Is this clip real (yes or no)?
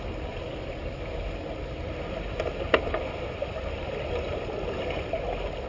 yes